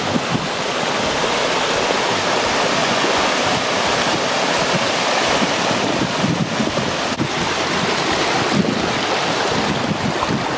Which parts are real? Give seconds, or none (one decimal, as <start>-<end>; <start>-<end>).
0.0-2.8; 3.3-10.6